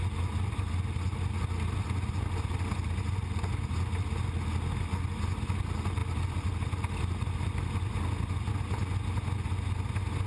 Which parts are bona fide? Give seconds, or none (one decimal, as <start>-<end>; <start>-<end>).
0.0-10.3